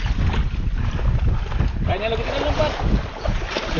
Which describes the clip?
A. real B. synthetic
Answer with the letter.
A